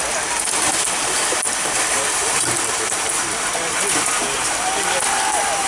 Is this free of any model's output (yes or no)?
yes